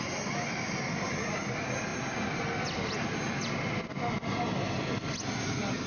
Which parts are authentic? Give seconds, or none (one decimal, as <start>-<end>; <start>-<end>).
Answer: 0.0-5.9

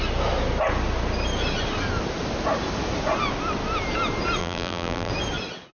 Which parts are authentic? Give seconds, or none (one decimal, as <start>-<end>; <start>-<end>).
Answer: 0.0-4.4; 5.1-5.8

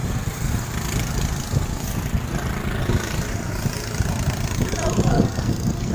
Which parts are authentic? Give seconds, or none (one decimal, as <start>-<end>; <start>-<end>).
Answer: 0.0-5.1

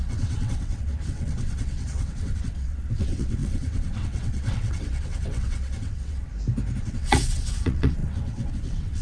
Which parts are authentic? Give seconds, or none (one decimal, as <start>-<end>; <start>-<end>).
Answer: 6.3-6.8

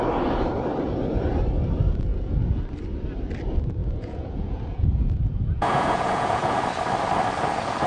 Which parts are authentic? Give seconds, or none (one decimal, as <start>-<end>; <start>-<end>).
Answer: 0.0-3.8; 6.6-7.9

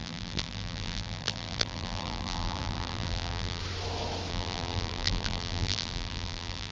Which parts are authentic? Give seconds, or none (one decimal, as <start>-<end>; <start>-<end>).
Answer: 3.6-4.3

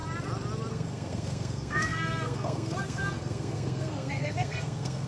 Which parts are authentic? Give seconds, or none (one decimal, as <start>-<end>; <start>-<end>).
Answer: 0.0-0.7